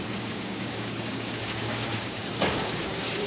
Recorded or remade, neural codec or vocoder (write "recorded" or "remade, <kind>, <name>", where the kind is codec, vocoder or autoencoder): remade, codec, DAC